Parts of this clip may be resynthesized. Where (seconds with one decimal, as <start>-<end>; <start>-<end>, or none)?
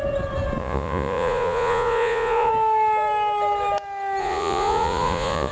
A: 0.6-2.5; 4.2-5.5